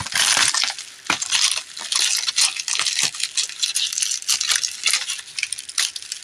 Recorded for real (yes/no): yes